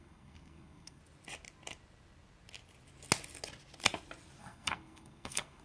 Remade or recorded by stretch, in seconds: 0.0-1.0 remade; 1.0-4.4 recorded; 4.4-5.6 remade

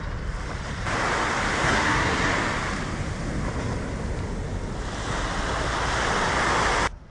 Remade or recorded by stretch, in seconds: 0.0-1.6 recorded; 1.6-2.3 remade; 2.3-7.1 recorded

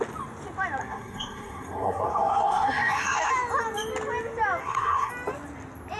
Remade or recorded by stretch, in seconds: 0.0-0.8 recorded; 0.8-3.3 remade; 3.3-4.6 recorded; 4.6-5.1 remade; 5.1-6.0 recorded